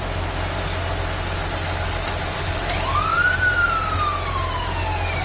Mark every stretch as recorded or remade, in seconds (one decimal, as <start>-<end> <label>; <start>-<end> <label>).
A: 0.0-5.2 recorded